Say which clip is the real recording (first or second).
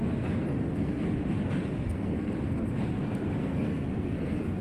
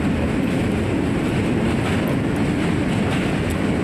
second